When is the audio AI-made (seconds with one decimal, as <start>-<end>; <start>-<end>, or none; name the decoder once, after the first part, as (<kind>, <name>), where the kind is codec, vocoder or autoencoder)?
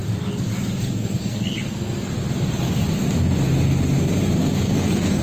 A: 0.8-2.1 (codec, SNAC); 4.4-5.2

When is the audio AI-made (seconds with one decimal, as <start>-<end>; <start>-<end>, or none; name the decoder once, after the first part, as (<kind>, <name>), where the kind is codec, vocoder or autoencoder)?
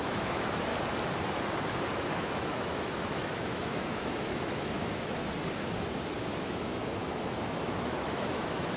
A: 0.0-0.7 (autoencoder, DAC-VAE); 2.2-5.2; 6.2-8.8